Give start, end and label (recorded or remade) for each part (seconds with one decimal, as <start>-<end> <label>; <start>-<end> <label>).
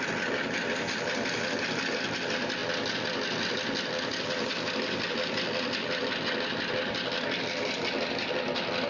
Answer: 0.0-8.9 recorded